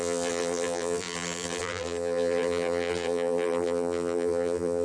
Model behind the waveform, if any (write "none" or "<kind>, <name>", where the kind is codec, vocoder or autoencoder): vocoder, BigVGAN v2